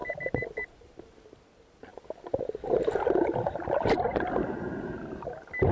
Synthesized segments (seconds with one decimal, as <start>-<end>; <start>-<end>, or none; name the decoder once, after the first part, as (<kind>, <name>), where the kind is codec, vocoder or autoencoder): 0.0-5.7 (vocoder, BigVGAN v2)